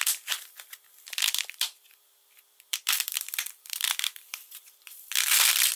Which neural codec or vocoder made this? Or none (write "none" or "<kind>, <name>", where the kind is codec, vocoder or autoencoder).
vocoder, BigVGAN v2